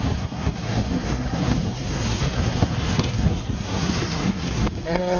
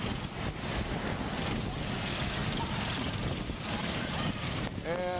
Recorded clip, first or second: second